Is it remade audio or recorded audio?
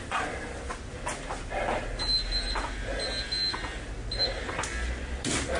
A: recorded